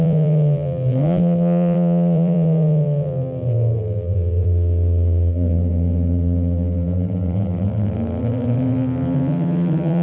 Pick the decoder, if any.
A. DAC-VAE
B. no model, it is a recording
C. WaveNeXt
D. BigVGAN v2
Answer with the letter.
D